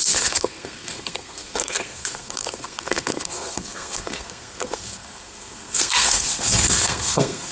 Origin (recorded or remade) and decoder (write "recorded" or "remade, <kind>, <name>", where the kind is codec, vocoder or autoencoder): remade, codec, SNAC